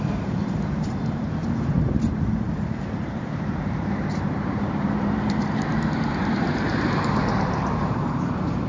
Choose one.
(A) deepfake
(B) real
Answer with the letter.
A